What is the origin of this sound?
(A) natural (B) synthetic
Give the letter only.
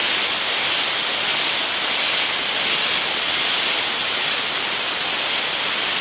A